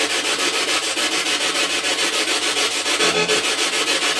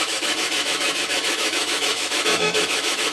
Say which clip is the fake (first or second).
second